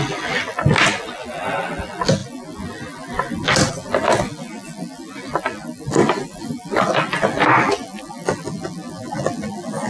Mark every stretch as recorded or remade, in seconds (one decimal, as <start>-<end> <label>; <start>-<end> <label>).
0.0-9.9 recorded